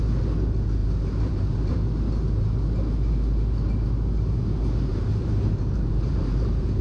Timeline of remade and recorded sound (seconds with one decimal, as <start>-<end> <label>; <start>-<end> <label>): 0.0-0.8 recorded; 0.8-1.8 remade; 1.8-4.9 recorded; 4.9-6.8 remade